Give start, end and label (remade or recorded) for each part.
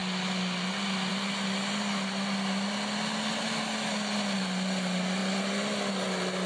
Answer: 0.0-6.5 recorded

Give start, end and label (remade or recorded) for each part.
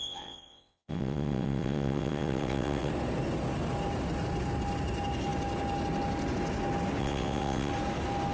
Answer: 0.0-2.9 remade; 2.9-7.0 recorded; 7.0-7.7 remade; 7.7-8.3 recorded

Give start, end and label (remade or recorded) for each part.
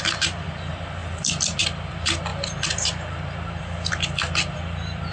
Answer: 0.0-5.1 recorded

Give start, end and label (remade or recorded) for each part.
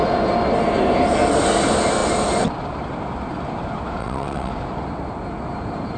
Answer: 0.0-4.0 recorded; 4.0-4.5 remade; 4.5-6.0 recorded